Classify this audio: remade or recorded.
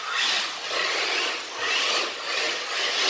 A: recorded